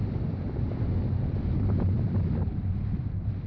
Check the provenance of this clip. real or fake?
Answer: fake